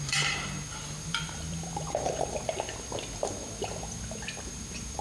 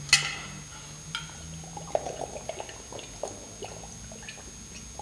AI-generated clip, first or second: first